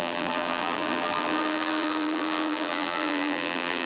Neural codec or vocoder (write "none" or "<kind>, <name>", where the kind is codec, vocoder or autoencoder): vocoder, BigVGAN v2